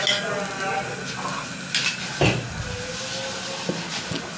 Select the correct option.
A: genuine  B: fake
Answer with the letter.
A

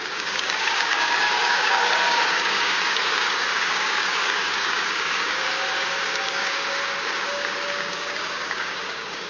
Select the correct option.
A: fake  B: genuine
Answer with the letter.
A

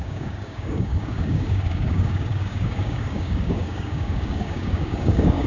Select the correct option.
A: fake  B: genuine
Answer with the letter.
A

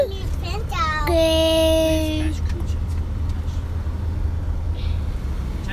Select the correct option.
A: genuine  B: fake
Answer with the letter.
A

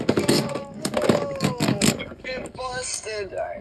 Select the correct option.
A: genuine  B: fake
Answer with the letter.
B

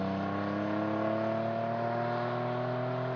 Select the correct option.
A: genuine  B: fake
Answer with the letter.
A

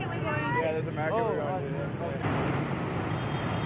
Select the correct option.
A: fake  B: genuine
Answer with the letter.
B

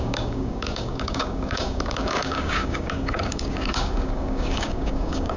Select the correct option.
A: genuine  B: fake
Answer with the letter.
B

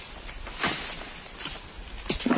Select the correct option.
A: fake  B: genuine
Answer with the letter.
B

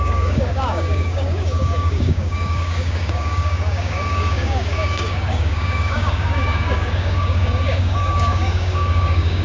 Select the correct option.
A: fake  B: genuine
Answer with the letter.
A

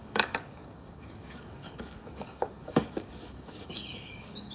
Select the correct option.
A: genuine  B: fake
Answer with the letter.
B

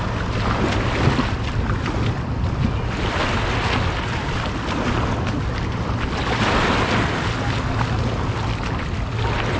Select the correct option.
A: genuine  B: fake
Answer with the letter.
A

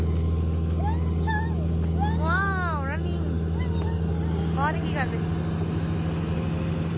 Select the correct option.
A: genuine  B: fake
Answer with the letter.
A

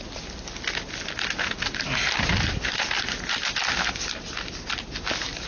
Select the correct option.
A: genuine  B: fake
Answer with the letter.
A